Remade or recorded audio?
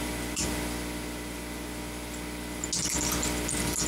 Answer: recorded